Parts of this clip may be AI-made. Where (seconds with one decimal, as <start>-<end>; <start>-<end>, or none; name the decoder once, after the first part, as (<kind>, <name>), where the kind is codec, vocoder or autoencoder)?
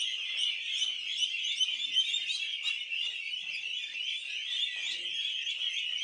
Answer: none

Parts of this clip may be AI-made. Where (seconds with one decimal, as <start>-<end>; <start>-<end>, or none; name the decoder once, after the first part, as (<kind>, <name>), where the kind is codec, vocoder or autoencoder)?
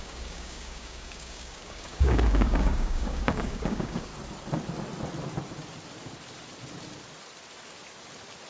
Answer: 0.0-4.1 (codec, DAC)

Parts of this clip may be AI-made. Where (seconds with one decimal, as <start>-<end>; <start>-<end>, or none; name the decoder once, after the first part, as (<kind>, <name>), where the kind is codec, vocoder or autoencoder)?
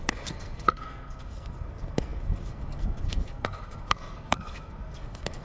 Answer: 0.0-5.4 (codec, SNAC)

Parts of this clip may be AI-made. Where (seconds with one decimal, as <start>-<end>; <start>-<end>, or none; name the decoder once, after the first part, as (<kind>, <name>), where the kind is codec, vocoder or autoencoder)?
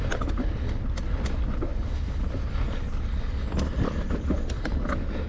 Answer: none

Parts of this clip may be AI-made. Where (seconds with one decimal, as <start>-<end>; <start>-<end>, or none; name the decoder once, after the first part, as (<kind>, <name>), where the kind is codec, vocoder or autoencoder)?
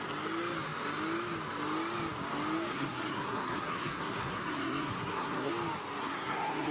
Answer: 2.7-5.5 (codec, SNAC); 6.0-6.7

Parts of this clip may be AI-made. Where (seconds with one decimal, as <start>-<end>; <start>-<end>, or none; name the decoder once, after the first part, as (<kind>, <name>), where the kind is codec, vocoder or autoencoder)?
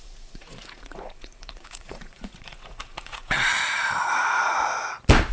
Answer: 0.0-3.5 (vocoder, Vocos)